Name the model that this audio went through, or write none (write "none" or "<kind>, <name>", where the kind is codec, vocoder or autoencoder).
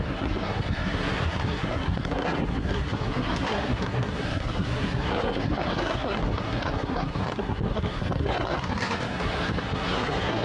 codec, SNAC